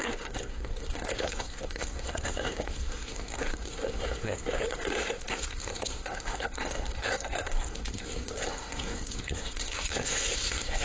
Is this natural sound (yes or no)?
no